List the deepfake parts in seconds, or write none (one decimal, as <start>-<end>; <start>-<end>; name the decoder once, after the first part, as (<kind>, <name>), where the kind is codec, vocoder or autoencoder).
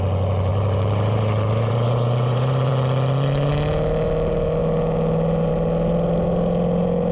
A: 0.5-2.7 (vocoder, BigVGAN v2)